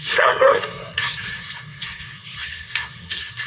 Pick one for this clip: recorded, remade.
remade